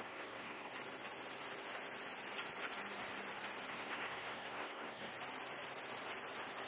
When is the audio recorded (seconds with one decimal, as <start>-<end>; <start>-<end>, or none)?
0.7-3.7; 5.1-6.7